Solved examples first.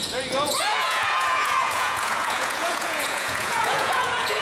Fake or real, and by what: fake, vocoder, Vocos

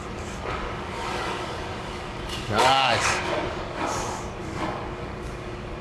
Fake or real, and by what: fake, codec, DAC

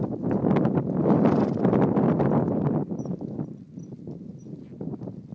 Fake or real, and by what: real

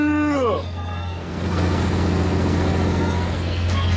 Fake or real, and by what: fake, codec, SNAC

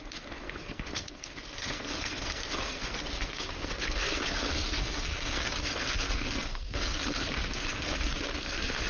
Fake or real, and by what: fake, codec, SNAC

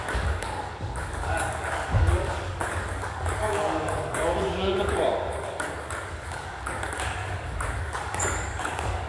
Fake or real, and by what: fake, codec, DAC